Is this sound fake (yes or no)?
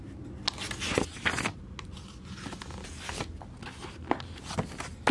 no